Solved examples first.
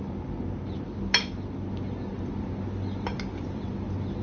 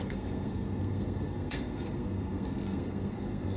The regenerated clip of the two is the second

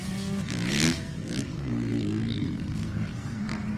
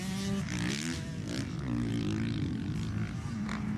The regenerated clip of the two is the first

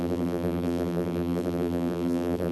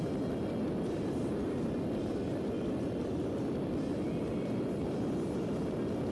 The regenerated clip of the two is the first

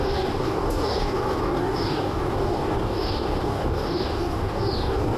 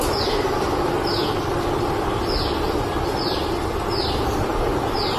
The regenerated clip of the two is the first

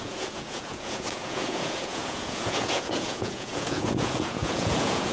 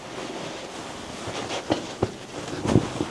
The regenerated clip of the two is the first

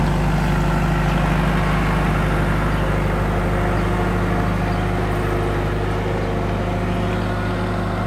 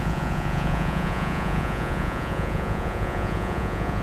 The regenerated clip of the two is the second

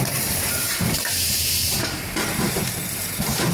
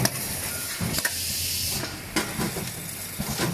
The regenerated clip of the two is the first